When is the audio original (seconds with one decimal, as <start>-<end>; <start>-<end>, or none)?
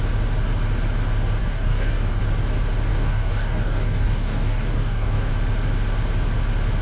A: 0.0-1.4; 2.2-2.9; 5.3-6.8